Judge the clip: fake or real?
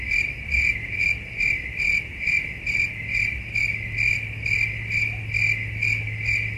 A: real